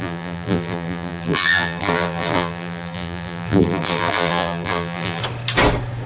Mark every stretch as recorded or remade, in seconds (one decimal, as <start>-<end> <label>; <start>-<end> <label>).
0.0-5.2 remade; 5.2-6.1 recorded